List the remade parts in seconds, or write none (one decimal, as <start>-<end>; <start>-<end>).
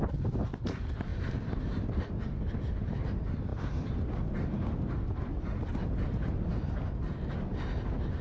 none